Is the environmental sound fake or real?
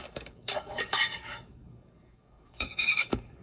fake